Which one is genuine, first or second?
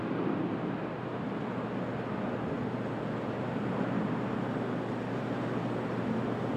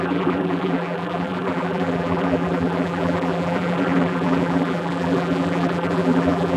first